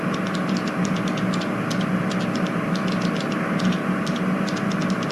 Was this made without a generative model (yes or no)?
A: yes